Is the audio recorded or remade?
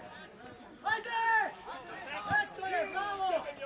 recorded